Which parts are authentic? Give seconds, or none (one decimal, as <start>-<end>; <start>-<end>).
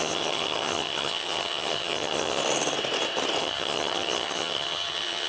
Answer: 2.4-3.4